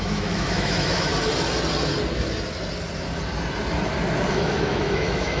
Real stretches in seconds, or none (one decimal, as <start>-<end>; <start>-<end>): 1.1-4.3